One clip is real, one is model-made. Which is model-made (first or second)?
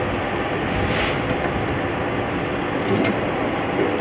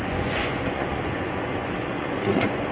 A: second